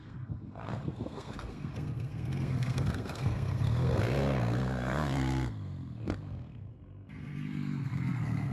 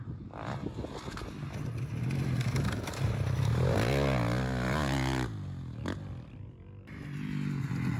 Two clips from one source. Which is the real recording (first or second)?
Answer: second